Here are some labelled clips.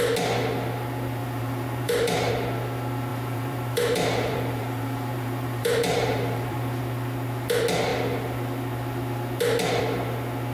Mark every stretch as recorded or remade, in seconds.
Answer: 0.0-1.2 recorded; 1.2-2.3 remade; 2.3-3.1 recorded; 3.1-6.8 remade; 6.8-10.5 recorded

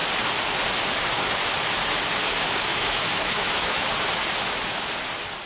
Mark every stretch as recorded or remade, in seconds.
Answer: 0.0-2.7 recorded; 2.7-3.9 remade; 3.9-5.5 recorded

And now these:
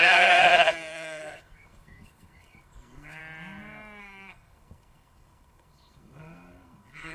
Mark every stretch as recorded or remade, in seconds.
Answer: 0.0-3.2 remade; 3.2-4.0 recorded; 4.0-7.1 remade